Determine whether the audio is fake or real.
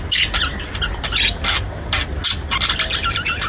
real